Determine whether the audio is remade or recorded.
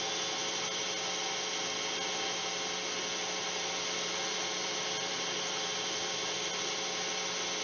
recorded